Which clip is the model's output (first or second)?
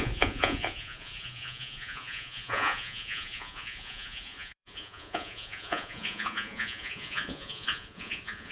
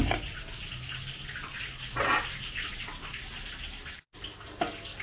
first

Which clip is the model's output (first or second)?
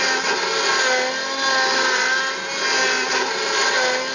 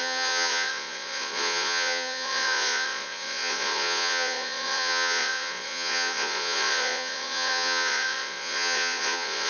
second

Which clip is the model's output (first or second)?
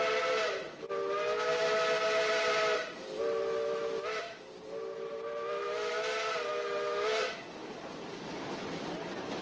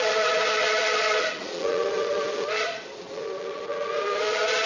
second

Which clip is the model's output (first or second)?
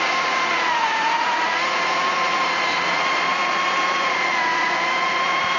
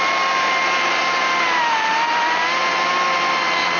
first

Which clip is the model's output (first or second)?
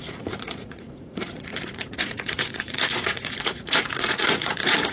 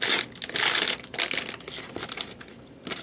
first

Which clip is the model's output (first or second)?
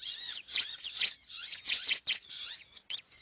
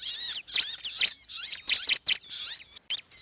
first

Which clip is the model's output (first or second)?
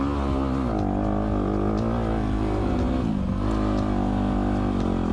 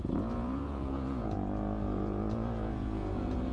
second